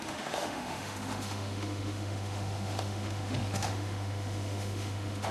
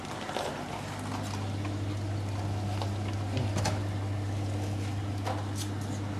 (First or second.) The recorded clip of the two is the second